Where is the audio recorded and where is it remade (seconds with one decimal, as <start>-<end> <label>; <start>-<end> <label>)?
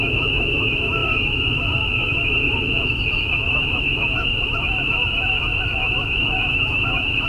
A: 0.0-7.3 remade